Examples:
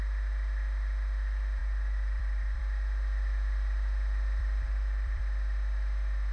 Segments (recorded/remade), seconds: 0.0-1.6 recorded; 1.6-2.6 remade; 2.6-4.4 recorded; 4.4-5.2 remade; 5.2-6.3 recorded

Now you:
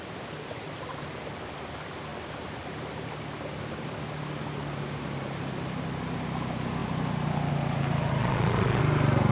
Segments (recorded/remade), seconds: 0.0-8.2 recorded; 8.2-8.8 remade; 8.8-9.3 recorded

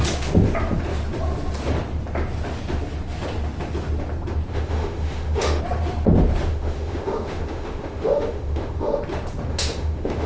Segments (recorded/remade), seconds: 0.0-4.5 recorded; 4.5-5.6 remade; 5.6-6.5 recorded; 6.5-9.0 remade; 9.0-9.5 recorded; 9.5-10.3 remade

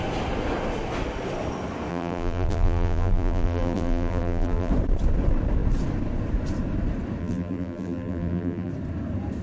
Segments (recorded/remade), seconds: 0.0-1.9 recorded; 1.9-4.7 remade; 4.7-7.2 recorded; 7.2-8.7 remade; 8.7-9.4 recorded

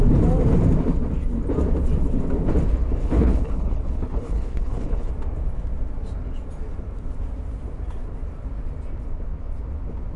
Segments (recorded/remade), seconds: 0.0-3.0 recorded; 3.0-5.1 remade; 5.1-10.2 recorded

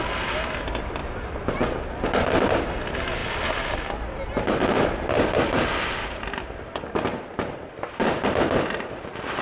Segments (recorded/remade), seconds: 0.0-9.4 recorded

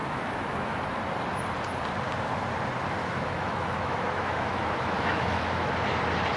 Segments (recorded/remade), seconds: 0.0-0.8 remade; 0.8-3.0 recorded; 3.0-5.7 remade; 5.7-6.4 recorded